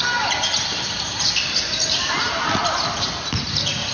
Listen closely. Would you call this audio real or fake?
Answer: real